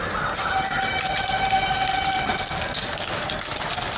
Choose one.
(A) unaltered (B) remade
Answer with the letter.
A